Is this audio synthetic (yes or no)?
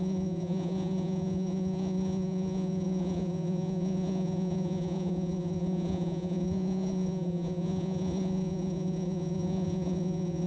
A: yes